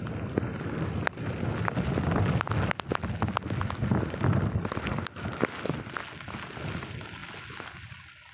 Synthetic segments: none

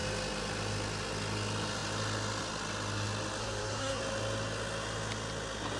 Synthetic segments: 3.4-4.0 (codec, SNAC)

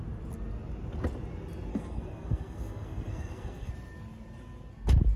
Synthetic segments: 1.7-3.7 (codec, SNAC)

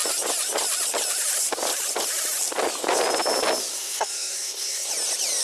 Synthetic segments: 3.7-4.9 (codec, SNAC)